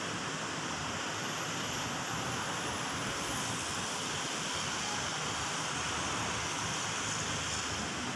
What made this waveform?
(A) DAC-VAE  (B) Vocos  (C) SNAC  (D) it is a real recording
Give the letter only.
D